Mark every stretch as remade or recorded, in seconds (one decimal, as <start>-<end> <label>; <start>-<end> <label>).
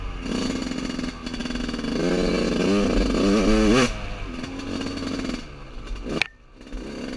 0.0-7.2 recorded